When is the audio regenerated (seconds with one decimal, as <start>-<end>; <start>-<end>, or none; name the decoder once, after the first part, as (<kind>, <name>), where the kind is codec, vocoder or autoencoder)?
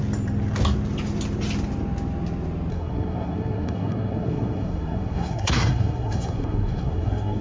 2.7-7.4 (codec, SNAC)